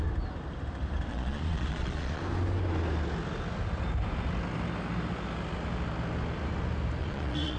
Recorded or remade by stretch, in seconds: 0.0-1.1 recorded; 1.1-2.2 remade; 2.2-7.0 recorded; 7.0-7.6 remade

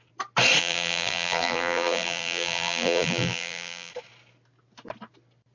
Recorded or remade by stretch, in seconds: 0.0-0.6 recorded; 0.6-3.9 remade; 3.9-5.5 recorded

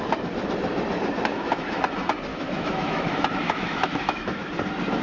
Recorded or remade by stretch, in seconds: 0.0-1.3 recorded; 1.3-1.8 remade; 1.8-2.3 recorded; 2.3-4.5 remade; 4.5-5.0 recorded

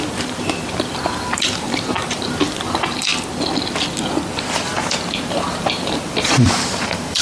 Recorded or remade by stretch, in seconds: 0.0-3.1 remade; 3.1-5.1 recorded; 5.1-7.2 remade

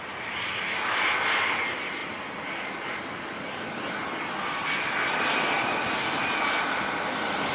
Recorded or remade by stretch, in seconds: 0.0-7.5 recorded

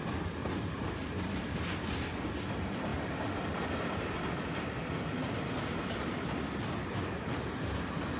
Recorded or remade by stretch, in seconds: 0.0-0.4 recorded; 0.4-1.6 remade; 1.6-2.9 recorded; 2.9-4.4 remade; 4.4-8.2 recorded